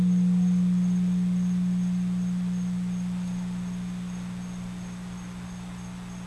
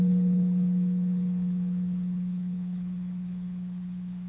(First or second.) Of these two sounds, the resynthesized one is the second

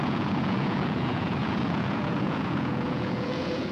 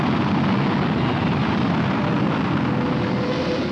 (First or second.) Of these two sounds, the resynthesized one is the first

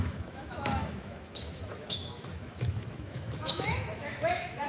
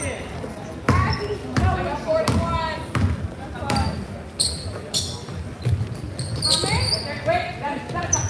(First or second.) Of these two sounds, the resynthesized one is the first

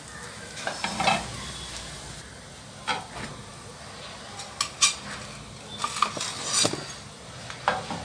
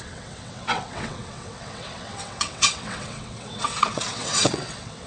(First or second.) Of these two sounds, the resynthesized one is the second